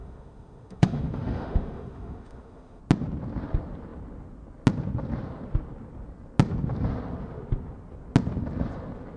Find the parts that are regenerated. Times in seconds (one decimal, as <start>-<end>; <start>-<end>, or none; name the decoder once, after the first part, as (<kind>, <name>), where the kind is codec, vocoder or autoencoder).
0.0-2.8 (autoencoder, DAC-VAE)